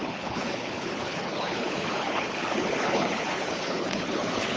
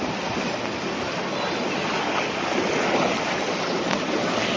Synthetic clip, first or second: first